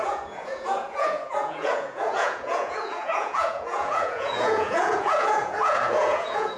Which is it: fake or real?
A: fake